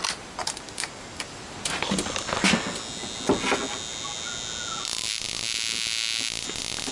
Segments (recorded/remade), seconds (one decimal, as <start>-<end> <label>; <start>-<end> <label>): 0.0-6.9 recorded